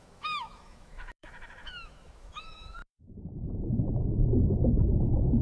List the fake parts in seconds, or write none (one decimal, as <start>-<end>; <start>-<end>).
0.0-2.8; 3.9-5.4